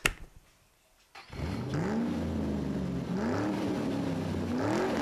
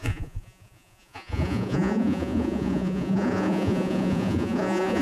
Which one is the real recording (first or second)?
first